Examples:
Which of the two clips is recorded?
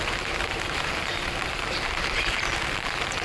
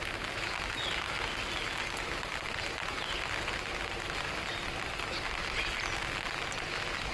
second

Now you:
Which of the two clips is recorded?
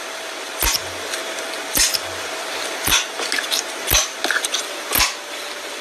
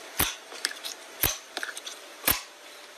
first